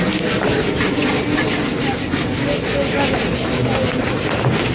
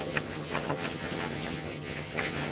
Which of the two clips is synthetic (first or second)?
second